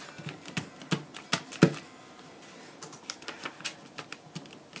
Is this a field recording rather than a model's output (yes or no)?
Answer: yes